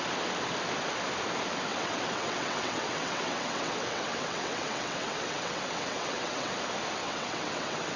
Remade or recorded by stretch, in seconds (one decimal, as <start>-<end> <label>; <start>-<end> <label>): 0.0-1.7 recorded; 1.7-6.5 remade; 6.5-7.0 recorded; 7.0-8.0 remade